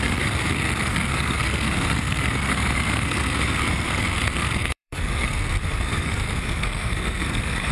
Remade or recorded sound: remade